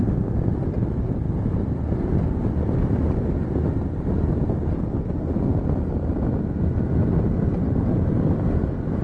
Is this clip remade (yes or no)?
no